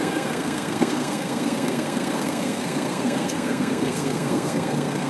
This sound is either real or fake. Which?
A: fake